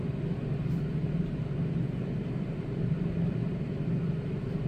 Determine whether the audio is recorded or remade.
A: remade